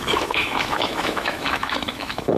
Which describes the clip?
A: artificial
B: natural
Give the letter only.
A